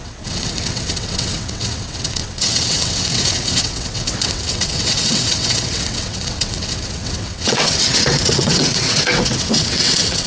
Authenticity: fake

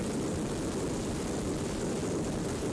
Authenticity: real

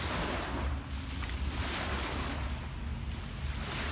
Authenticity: real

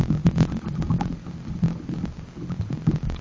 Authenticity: real